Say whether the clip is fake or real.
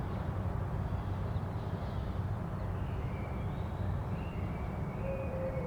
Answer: fake